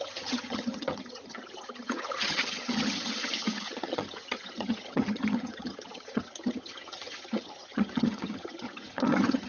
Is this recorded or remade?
remade